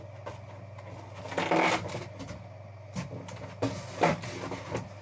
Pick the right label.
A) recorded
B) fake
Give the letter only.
A